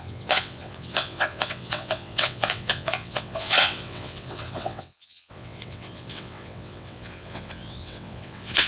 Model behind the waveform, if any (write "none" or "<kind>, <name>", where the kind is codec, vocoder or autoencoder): vocoder, WaveNeXt